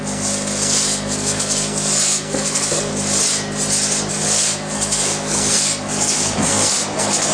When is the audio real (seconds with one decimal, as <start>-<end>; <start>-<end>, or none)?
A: 2.9-4.1